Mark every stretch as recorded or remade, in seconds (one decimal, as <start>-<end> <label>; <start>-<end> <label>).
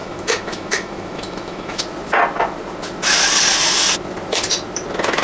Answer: 0.0-1.8 remade; 1.8-5.2 recorded